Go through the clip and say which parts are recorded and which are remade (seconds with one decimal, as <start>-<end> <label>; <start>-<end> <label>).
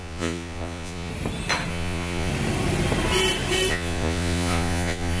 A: 0.0-1.1 remade; 1.1-1.7 recorded; 1.7-2.3 remade; 2.3-3.7 recorded; 3.7-5.2 remade